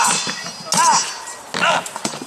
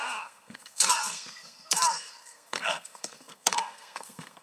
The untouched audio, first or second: first